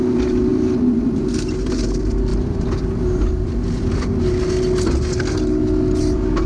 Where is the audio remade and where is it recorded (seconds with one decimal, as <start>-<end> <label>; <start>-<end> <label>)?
0.0-6.5 recorded